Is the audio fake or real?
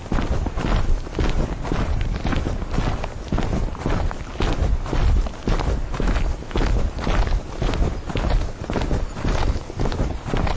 real